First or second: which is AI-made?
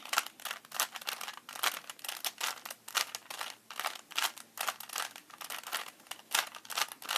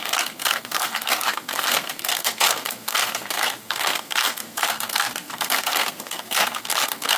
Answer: second